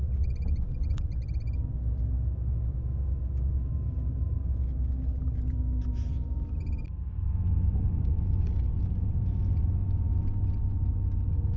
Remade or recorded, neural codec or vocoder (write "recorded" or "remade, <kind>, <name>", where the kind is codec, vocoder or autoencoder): recorded